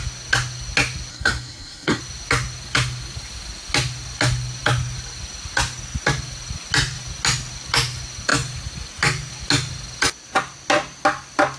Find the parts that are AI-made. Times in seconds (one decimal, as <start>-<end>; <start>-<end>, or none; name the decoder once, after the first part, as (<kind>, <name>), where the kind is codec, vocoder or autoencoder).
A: 1.1-2.0 (codec, SNAC)